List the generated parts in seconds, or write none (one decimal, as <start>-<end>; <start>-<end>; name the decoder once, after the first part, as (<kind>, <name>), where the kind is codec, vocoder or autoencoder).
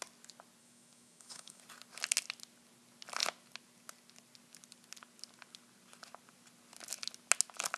0.6-1.6 (autoencoder, DAC-VAE)